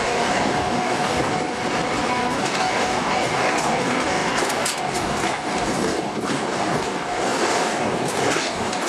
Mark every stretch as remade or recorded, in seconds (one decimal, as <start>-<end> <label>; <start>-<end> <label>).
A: 0.0-1.6 remade; 1.6-2.1 recorded; 2.1-8.9 remade